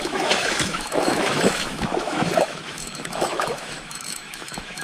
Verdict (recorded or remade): remade